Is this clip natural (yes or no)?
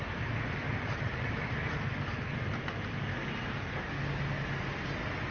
yes